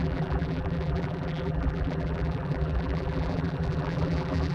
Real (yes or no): no